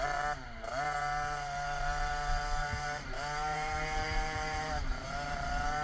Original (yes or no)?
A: no